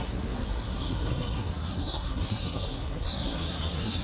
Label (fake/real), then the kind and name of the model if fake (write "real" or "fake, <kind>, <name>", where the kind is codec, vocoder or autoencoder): fake, codec, SNAC